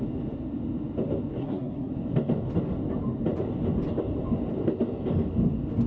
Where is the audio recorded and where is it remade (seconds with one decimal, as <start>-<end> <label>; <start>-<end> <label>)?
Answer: 0.0-1.4 recorded; 1.4-1.9 remade; 1.9-5.9 recorded